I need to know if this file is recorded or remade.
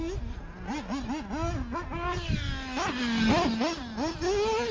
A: recorded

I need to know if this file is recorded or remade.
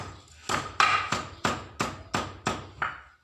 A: recorded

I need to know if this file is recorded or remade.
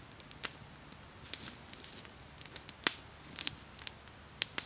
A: recorded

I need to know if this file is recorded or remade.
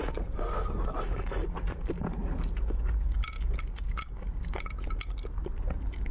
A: recorded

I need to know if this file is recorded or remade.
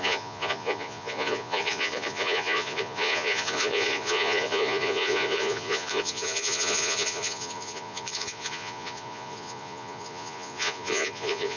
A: remade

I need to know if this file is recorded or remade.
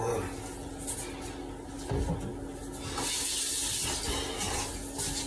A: recorded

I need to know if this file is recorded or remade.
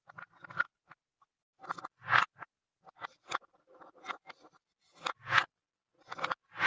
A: recorded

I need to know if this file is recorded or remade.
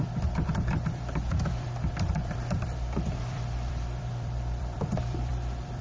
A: remade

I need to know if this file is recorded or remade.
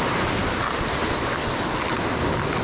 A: recorded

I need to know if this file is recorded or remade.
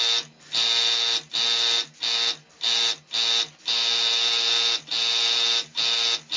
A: recorded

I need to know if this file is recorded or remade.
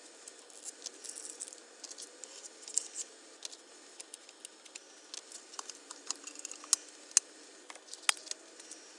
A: recorded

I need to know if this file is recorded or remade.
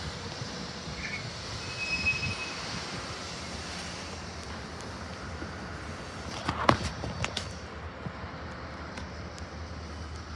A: recorded